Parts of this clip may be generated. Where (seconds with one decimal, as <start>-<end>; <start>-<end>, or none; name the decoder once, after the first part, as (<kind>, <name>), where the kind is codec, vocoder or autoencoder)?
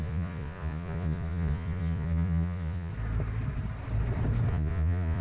0.0-2.9 (vocoder, Vocos); 4.5-5.2